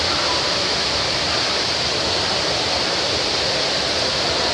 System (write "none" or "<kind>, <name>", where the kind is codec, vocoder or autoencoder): none